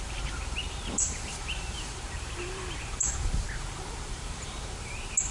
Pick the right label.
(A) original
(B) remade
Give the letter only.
B